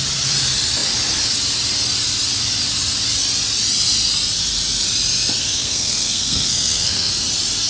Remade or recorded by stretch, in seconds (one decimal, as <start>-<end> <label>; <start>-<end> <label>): 0.0-5.4 recorded; 5.4-7.1 remade; 7.1-7.7 recorded